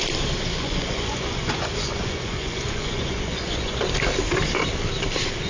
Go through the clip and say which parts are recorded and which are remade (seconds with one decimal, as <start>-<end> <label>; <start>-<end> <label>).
0.0-0.5 recorded; 0.5-3.8 remade; 3.8-5.5 recorded